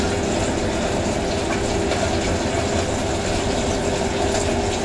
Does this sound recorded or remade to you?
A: recorded